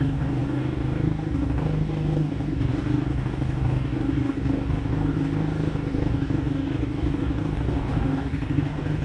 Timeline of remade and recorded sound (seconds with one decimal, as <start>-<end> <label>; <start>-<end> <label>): 0.0-9.0 remade